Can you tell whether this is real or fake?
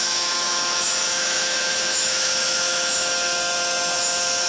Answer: fake